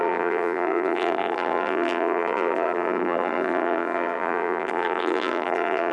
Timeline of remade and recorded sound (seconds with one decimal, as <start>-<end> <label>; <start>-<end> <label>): 0.0-5.9 remade